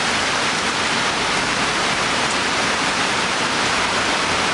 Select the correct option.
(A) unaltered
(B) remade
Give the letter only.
A